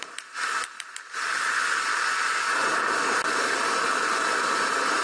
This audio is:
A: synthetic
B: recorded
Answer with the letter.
B